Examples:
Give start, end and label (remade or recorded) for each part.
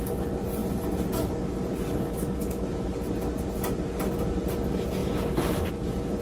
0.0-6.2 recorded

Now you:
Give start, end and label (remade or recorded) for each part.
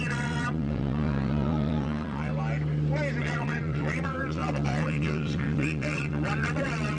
0.0-2.3 remade; 2.3-3.2 recorded; 3.2-7.0 remade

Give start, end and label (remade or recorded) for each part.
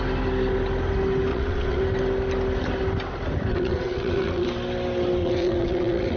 0.0-1.3 recorded; 1.3-1.8 remade; 1.8-3.5 recorded; 3.5-4.5 remade; 4.5-5.2 recorded; 5.2-6.2 remade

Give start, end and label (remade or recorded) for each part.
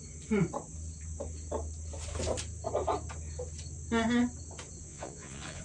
0.0-4.8 recorded; 4.8-5.6 remade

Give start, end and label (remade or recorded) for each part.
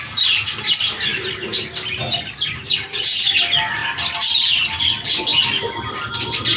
0.0-1.1 recorded; 1.1-3.2 remade; 3.2-6.6 recorded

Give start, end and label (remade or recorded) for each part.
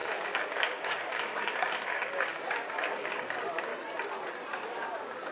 0.0-3.7 remade; 3.7-4.5 recorded; 4.5-5.3 remade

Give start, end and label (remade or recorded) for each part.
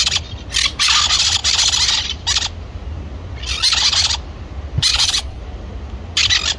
0.0-4.9 recorded; 4.9-5.4 remade; 5.4-6.6 recorded